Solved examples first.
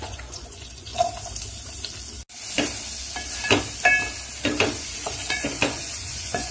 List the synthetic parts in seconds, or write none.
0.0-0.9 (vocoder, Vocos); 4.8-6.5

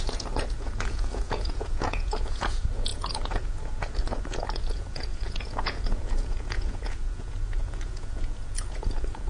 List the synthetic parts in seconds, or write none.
0.0-9.3 (vocoder, Vocos)

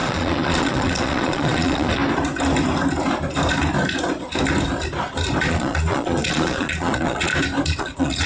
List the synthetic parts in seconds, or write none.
0.0-2.0 (vocoder, Vocos); 5.5-7.3; 7.8-8.3

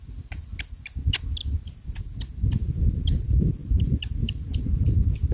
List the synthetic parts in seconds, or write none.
none

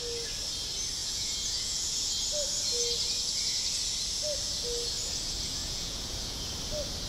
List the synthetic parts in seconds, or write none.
1.0-2.1 (vocoder, Vocos); 5.6-6.5

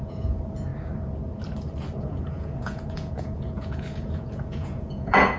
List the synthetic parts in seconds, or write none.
0.0-0.7 (vocoder, Vocos); 2.0-5.4